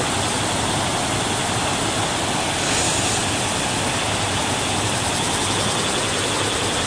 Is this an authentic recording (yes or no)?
yes